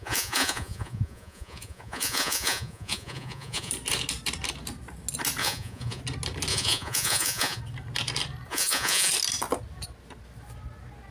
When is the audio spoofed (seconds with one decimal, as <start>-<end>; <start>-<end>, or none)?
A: 0.0-3.7; 5.4-6.0; 6.5-7.6; 8.5-9.1